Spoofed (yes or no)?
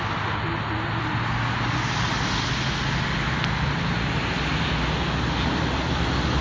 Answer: no